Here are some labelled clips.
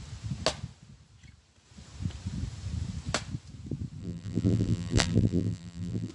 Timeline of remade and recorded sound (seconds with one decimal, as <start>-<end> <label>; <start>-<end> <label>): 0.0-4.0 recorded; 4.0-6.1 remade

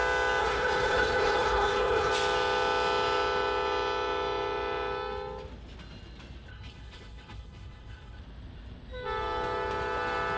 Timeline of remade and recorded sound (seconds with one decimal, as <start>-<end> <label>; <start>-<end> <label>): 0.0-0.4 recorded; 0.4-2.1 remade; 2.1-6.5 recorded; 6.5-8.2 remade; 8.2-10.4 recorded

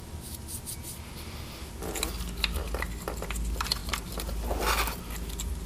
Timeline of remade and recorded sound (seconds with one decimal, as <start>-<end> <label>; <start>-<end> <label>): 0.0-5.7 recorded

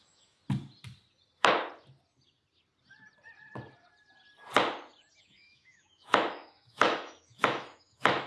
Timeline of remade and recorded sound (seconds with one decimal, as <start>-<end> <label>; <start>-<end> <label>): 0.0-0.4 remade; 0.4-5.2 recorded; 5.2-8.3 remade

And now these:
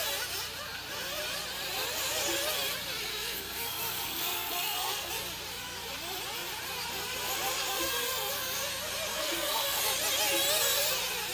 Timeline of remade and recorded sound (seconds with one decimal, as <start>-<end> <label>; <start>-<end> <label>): 0.0-3.1 recorded; 3.1-5.1 remade; 5.1-7.7 recorded; 7.7-8.3 remade; 8.3-9.1 recorded; 9.1-9.8 remade; 9.8-11.3 recorded

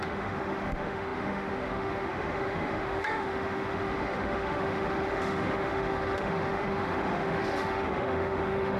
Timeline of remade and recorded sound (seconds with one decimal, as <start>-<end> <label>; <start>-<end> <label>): 0.0-8.8 remade